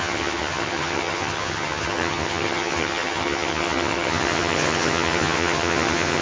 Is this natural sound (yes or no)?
no